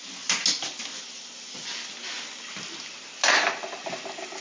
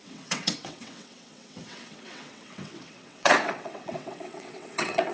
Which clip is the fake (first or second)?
second